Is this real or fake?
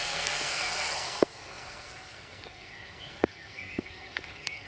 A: fake